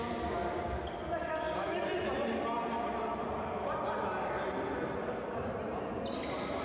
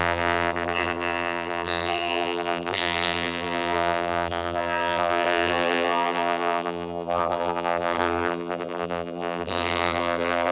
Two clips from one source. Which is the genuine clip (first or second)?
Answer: first